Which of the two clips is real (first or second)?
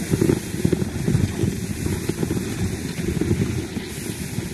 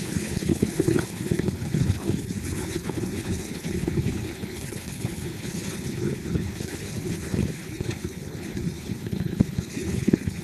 first